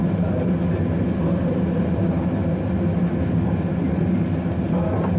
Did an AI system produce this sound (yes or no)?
no